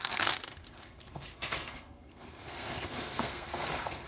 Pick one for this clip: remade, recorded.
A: remade